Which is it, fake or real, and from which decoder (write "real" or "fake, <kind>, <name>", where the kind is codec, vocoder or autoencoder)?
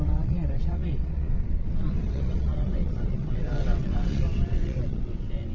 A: fake, vocoder, WaveNeXt